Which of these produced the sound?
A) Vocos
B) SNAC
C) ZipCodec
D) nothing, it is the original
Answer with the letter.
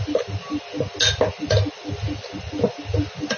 D